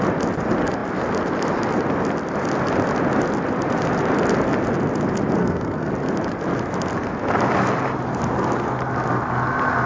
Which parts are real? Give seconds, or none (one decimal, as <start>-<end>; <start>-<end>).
0.0-5.4; 5.9-9.9